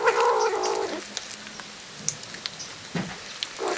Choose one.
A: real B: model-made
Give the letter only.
A